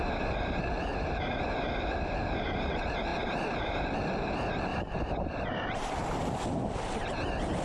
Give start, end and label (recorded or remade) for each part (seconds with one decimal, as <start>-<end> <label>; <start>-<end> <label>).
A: 0.0-0.9 recorded; 0.9-1.4 remade; 1.4-3.1 recorded; 3.1-3.8 remade; 3.8-4.7 recorded; 4.7-6.2 remade; 6.2-7.6 recorded